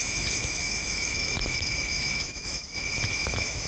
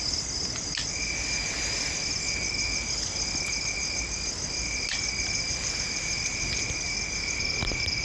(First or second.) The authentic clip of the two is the second